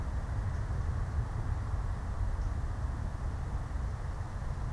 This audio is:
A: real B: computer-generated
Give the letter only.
A